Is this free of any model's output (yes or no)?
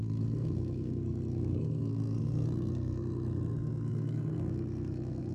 no